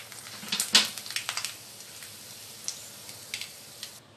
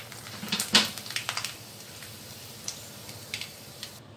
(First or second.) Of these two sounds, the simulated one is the second